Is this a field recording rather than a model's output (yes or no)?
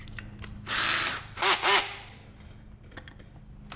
yes